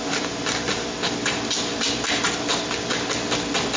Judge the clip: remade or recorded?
recorded